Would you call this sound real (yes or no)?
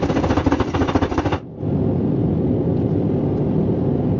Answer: yes